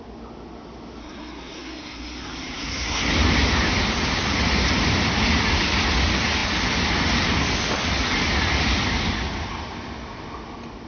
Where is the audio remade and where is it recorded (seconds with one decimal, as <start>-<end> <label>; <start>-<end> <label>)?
0.0-1.0 recorded; 1.0-3.1 remade; 3.1-10.9 recorded